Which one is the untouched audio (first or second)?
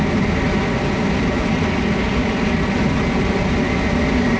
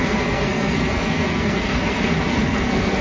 first